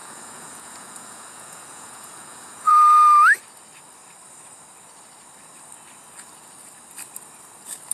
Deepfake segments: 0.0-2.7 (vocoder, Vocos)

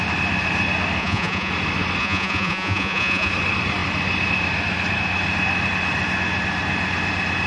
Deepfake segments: 1.0-1.5 (vocoder, Vocos); 2.0-3.3

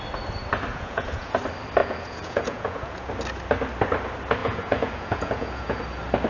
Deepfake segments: 0.7-1.3 (vocoder, Vocos); 1.8-3.1; 4.4-5.8

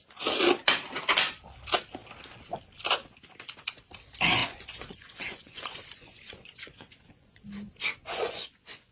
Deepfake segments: 4.4-7.4 (vocoder, Vocos); 8.0-8.9